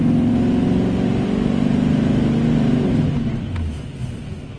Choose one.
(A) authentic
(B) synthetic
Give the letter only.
A